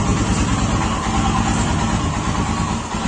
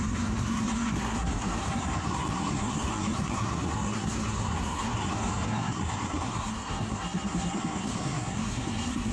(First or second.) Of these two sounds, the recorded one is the first